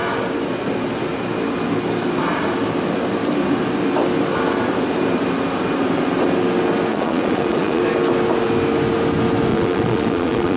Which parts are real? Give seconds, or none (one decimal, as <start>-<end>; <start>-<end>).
0.0-6.9; 7.8-9.5